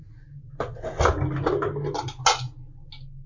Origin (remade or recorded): recorded